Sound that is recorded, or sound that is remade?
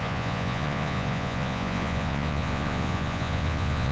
remade